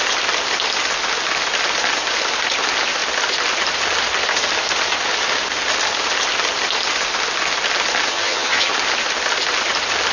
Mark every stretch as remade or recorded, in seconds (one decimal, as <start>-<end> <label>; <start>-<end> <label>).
0.0-8.1 recorded; 8.1-8.7 remade; 8.7-10.1 recorded